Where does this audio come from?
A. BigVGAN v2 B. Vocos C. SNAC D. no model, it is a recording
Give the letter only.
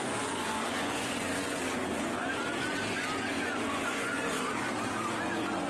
B